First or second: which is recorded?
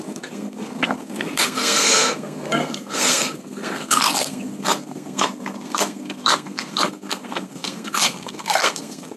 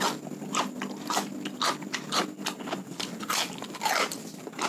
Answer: second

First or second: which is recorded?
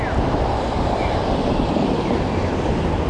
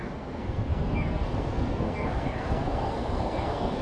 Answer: first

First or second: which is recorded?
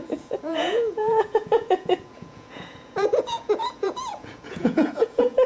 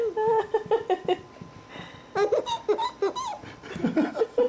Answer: second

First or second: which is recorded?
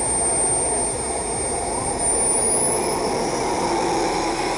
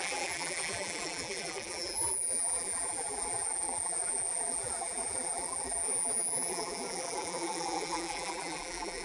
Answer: first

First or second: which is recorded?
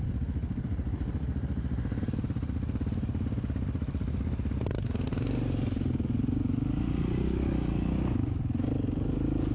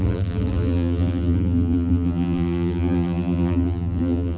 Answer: first